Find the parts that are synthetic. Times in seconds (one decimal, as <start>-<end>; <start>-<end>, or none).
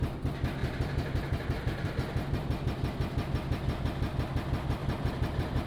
0.6-1.9; 4.8-5.7